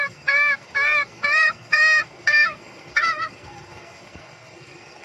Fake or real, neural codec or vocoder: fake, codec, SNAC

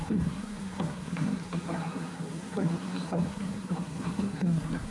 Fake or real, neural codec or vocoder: fake, codec, SNAC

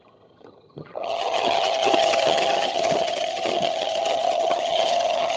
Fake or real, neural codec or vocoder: fake, vocoder, HiFi-GAN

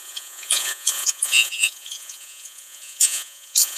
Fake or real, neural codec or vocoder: fake, vocoder, Vocos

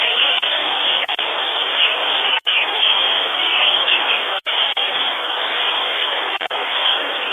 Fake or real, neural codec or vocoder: fake, codec, DAC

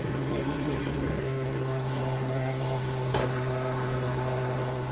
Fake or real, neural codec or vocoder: fake, codec, SNAC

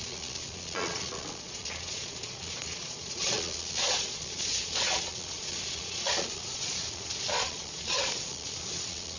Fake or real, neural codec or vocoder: fake, vocoder, Vocos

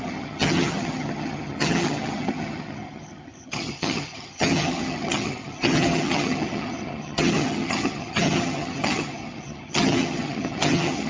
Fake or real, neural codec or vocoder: fake, vocoder, HiFi-GAN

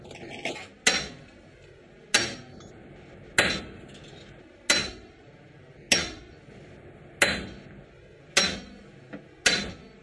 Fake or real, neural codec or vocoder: real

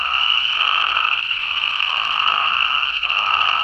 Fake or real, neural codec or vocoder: fake, codec, SNAC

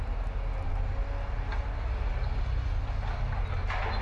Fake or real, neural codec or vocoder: real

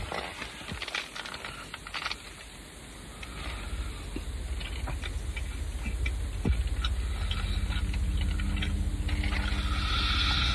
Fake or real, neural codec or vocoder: real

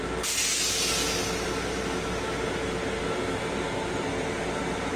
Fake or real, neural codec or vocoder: real